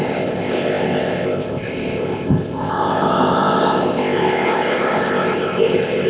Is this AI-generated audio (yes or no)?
yes